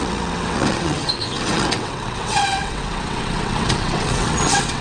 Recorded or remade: remade